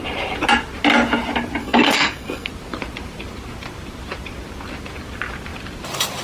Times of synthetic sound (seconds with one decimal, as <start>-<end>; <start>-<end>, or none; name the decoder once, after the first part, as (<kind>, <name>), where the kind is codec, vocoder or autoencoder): 1.6-2.5 (codec, SNAC)

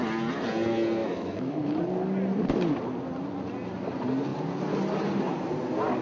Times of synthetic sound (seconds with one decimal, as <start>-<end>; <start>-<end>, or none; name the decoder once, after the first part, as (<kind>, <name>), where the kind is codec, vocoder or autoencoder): 1.0-1.8 (autoencoder, DAC-VAE)

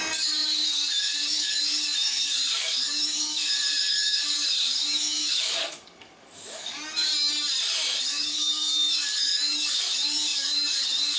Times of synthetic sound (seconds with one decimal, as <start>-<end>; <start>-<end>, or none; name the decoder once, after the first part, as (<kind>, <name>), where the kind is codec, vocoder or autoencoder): 0.0-7.1 (codec, DAC); 8.0-11.2

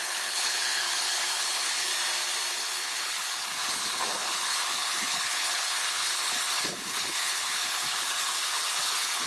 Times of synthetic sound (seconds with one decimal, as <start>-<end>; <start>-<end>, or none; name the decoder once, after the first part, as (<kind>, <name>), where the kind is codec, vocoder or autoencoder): 0.0-1.9 (codec, HILCodec); 2.5-9.3

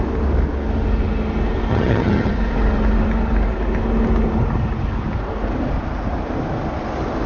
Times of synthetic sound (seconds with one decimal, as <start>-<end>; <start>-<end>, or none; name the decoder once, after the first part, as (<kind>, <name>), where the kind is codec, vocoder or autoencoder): 1.7-2.3 (vocoder, HiFi-GAN)